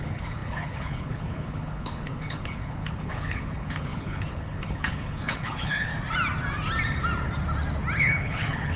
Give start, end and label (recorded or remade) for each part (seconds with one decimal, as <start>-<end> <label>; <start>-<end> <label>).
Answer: 0.0-5.9 remade; 5.9-8.0 recorded; 8.0-8.8 remade